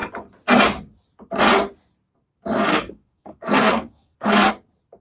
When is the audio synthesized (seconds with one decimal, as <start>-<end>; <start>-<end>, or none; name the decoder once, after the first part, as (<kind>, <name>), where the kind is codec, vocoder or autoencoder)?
2.7-4.5 (codec, SNAC)